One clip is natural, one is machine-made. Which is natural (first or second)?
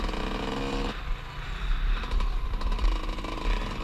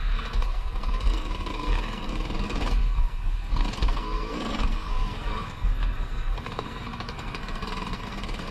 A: first